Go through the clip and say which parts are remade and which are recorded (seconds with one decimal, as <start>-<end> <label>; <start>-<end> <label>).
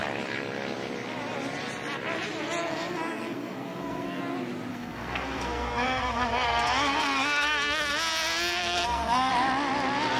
0.0-2.6 recorded; 2.6-4.2 remade; 4.2-4.7 recorded; 4.7-7.9 remade; 7.9-8.6 recorded; 8.6-9.3 remade; 9.3-10.2 recorded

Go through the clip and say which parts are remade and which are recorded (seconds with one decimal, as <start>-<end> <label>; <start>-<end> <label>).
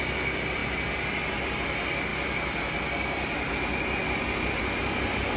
0.0-5.4 recorded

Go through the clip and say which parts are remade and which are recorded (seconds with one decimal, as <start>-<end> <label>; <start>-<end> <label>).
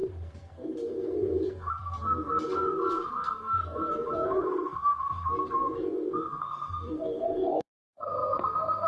0.0-8.9 remade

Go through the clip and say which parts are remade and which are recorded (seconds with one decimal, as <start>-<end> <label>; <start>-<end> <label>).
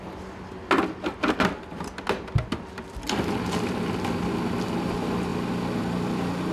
0.0-6.5 recorded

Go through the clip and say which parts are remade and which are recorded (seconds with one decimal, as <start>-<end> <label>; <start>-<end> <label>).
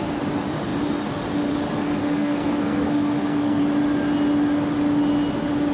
0.0-2.0 recorded; 2.0-3.6 remade; 3.6-5.7 recorded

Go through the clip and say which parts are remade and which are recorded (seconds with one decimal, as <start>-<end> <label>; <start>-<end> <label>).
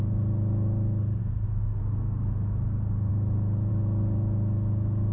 0.0-1.2 recorded; 1.2-1.8 remade; 1.8-5.1 recorded